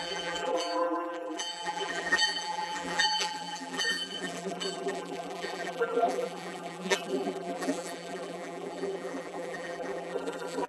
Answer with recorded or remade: remade